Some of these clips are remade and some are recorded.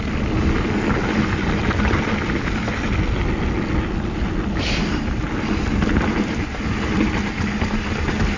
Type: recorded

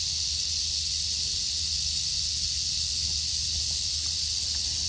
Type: recorded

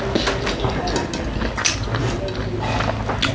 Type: recorded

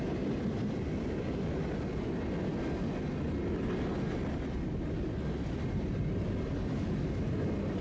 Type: recorded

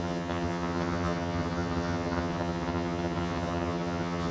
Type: remade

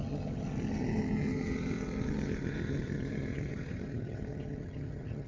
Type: remade